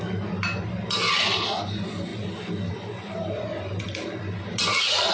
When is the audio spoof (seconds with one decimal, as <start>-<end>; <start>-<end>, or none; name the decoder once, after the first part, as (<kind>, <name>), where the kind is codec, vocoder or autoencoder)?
none